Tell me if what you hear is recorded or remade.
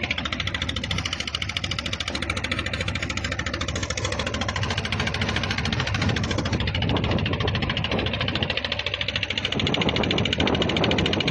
recorded